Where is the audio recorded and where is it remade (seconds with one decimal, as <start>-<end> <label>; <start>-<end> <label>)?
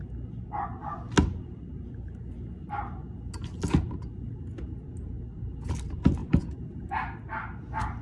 0.0-6.2 recorded; 6.2-6.9 remade; 6.9-8.0 recorded